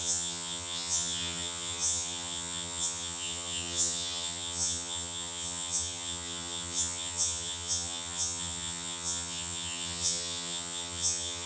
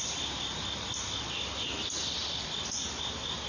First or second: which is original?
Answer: second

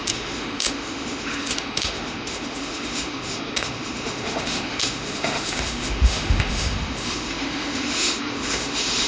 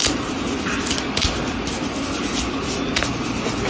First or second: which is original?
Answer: second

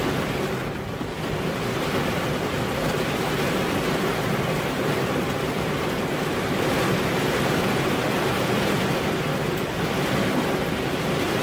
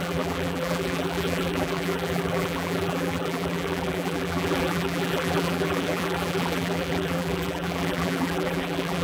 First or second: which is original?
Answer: first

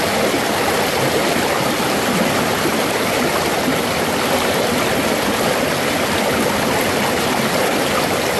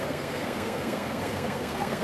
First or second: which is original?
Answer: first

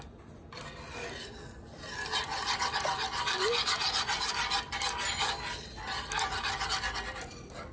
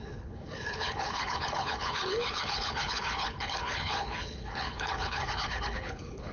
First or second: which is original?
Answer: first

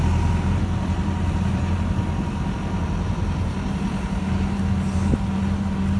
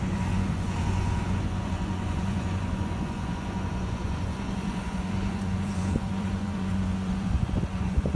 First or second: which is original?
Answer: first